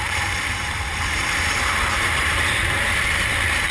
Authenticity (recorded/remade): remade